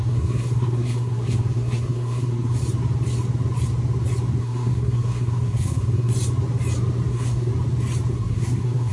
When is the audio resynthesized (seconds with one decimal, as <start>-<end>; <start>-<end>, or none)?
0.0-2.6; 4.4-6.1; 7.1-7.5; 8.1-8.9